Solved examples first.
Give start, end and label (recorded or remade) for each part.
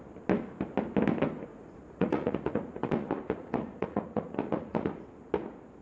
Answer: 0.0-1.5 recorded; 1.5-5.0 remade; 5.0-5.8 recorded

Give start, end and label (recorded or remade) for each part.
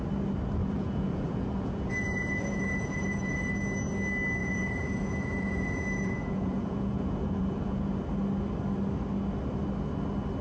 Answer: 0.0-0.6 recorded; 0.6-3.5 remade; 3.5-4.4 recorded; 4.4-7.8 remade; 7.8-10.4 recorded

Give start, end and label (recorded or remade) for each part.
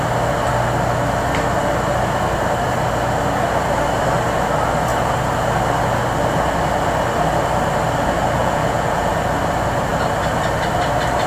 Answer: 0.0-8.4 recorded; 8.4-9.1 remade; 9.1-11.3 recorded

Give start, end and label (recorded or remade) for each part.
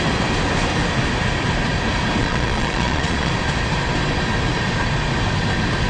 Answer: 0.0-2.2 recorded; 2.2-3.3 remade; 3.3-5.9 recorded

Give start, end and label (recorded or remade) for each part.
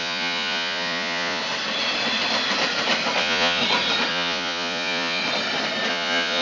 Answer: 0.0-1.4 remade; 1.4-3.2 recorded; 3.2-3.6 remade; 3.6-4.1 recorded; 4.1-5.2 remade; 5.2-5.9 recorded; 5.9-6.4 remade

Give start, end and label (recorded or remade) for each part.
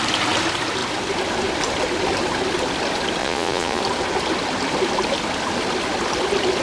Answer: 0.0-3.2 recorded; 3.2-3.8 remade; 3.8-6.6 recorded